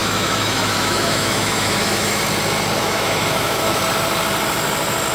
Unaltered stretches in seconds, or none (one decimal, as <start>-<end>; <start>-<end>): 2.2-2.8; 3.8-5.1